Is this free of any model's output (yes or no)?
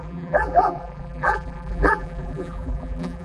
no